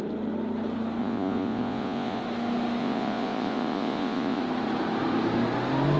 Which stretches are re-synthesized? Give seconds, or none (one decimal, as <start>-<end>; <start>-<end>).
1.0-2.2; 2.8-4.4